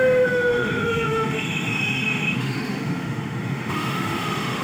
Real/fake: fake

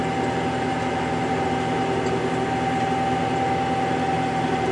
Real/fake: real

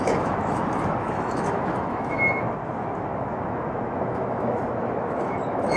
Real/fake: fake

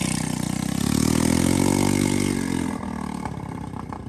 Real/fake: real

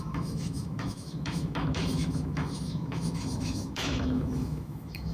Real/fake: fake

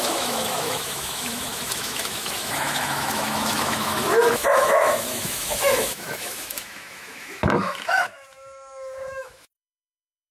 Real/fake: fake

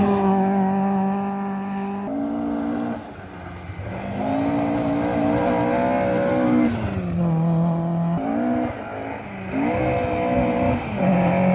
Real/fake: real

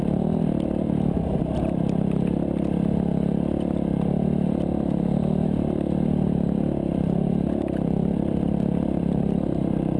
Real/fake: real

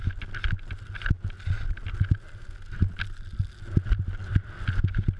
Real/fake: real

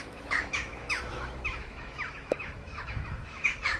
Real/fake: fake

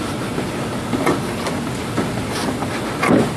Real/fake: real